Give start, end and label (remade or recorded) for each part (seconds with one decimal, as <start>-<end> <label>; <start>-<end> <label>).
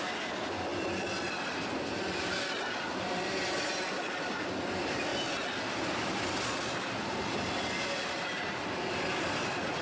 0.0-9.8 recorded